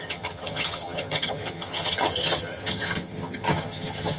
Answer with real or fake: fake